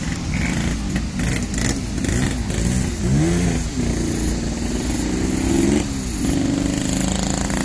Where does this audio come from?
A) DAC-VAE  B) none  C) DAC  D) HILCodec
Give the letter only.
B